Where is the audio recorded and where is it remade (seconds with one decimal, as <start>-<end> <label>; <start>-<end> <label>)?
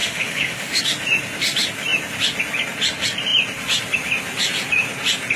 0.0-0.8 remade; 0.8-5.4 recorded